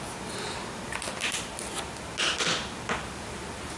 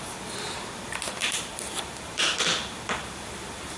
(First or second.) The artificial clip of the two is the second